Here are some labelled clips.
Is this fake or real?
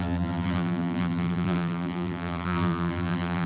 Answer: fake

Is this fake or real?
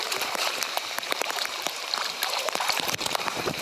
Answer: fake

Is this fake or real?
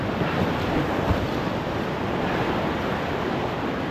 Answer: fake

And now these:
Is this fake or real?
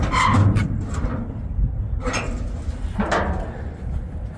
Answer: real